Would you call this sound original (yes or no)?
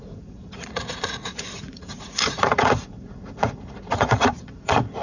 no